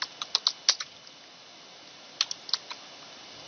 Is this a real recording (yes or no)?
yes